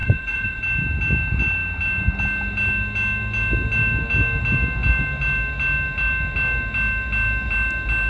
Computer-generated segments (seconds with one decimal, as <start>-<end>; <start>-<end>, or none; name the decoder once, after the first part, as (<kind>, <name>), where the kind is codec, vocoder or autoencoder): 0.0-0.6 (vocoder, Vocos)